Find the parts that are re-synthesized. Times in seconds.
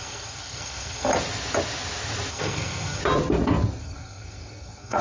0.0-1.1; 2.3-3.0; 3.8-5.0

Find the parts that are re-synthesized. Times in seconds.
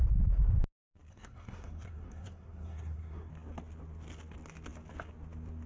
1.1-3.3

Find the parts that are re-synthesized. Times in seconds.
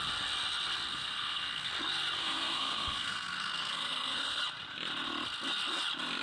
0.9-1.7; 2.2-4.4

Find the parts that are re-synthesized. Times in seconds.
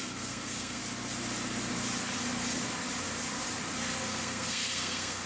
0.0-0.8; 4.0-5.3